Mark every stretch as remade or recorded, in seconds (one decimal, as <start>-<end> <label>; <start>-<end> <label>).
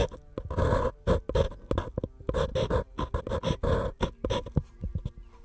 0.0-5.4 recorded